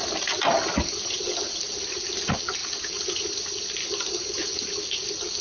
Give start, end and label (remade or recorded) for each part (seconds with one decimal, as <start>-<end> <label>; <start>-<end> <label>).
0.0-1.7 recorded; 1.7-2.6 remade; 2.6-3.4 recorded; 3.4-3.8 remade; 3.8-4.9 recorded; 4.9-5.4 remade